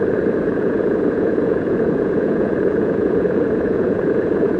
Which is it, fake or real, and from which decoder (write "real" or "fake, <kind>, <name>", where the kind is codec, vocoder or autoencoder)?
fake, vocoder, Vocos